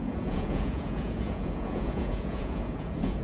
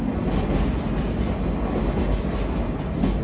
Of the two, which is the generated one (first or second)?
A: first